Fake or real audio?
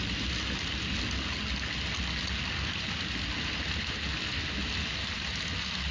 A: real